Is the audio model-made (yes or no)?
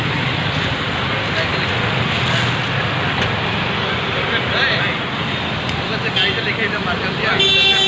no